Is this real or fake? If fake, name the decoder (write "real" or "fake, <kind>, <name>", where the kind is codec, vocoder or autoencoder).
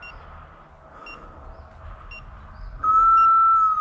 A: real